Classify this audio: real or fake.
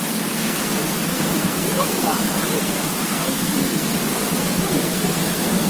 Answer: fake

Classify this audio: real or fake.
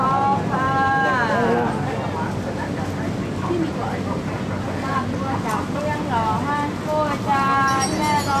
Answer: real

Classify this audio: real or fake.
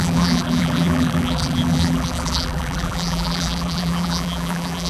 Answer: fake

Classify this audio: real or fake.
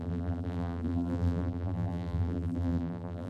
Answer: fake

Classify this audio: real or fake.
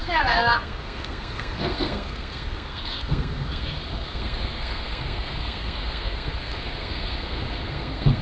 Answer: fake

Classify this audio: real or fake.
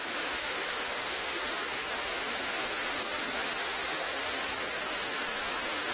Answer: fake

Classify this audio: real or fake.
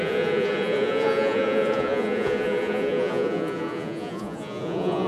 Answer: fake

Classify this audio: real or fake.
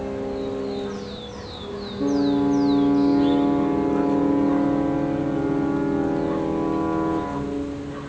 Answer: real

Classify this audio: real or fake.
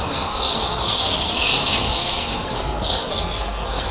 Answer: fake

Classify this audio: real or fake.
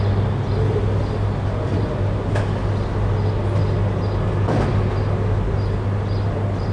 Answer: real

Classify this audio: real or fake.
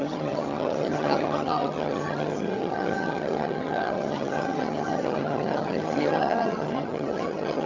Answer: fake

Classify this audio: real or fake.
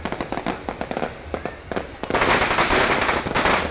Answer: real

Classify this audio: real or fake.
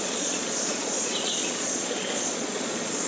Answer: fake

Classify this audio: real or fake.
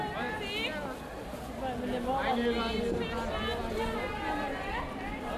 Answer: real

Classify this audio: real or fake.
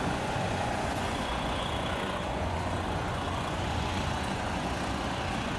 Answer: fake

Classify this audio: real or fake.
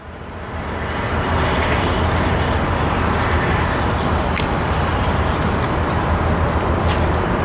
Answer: real